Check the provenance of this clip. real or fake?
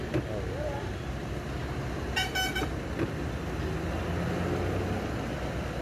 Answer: real